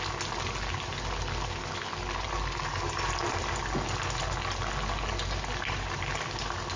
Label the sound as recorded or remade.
recorded